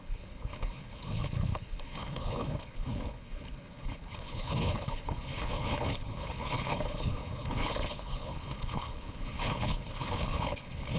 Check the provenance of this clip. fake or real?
fake